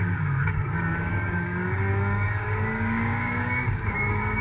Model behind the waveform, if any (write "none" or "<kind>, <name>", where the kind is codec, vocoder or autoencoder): codec, DAC